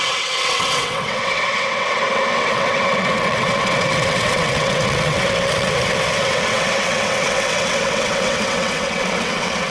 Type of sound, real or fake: fake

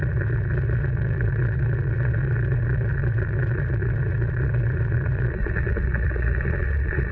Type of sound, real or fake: fake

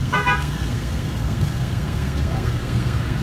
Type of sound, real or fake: fake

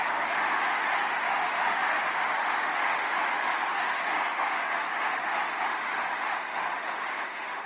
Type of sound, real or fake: fake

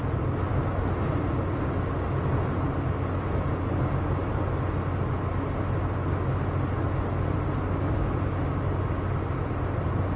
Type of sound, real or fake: real